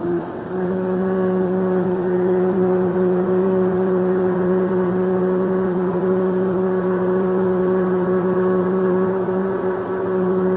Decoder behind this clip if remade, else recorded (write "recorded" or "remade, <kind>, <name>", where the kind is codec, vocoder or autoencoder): remade, vocoder, WaveNeXt